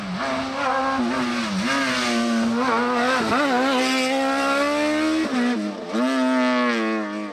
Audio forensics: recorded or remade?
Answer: recorded